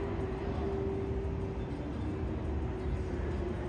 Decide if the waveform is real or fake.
real